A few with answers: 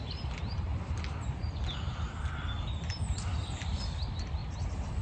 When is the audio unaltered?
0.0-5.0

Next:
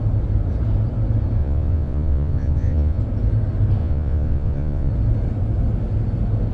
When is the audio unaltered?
0.0-1.4; 3.0-3.8; 4.9-6.5

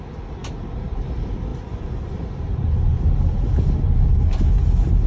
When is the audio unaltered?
0.0-5.1

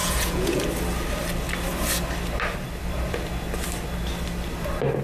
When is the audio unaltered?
0.6-5.0

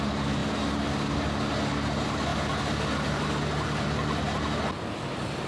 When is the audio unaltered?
0.0-5.5

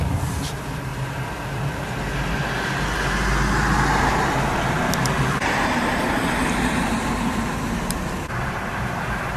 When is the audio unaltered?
0.0-9.4

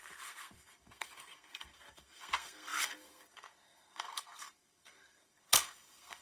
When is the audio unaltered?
none